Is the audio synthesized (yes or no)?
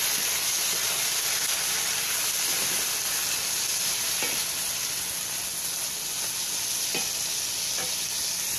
no